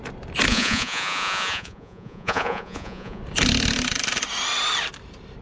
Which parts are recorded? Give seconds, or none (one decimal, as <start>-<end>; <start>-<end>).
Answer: 0.0-0.5; 3.2-5.4

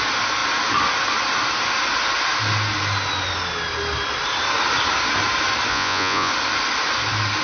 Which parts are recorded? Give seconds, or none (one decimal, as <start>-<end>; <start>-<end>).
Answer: 0.0-5.7; 6.3-7.4

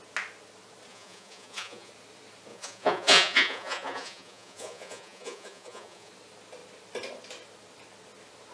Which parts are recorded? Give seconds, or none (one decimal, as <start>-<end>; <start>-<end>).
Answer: 0.0-0.9; 1.9-2.5; 6.1-8.5